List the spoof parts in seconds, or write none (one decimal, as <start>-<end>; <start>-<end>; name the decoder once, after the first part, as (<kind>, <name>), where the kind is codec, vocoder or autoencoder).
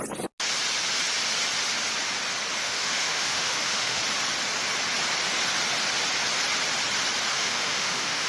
2.6-4.0 (autoencoder, DAC-VAE); 7.3-8.3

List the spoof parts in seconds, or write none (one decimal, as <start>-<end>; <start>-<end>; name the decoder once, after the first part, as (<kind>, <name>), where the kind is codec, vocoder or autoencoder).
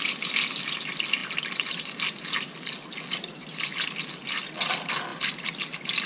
none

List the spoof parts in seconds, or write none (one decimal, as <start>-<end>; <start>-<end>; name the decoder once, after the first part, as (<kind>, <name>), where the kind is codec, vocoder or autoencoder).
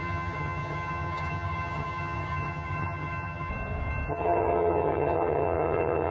0.0-3.5 (vocoder, HiFi-GAN); 4.1-6.1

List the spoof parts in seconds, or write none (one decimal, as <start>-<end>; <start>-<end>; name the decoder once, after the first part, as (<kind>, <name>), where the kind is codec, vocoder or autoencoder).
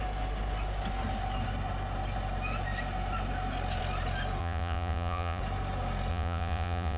4.4-5.4 (vocoder, Vocos); 6.1-7.0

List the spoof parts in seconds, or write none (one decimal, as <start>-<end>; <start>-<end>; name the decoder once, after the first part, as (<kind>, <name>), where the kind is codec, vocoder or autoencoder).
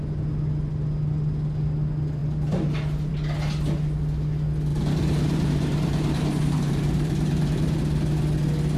4.7-7.8 (vocoder, BigVGAN v2)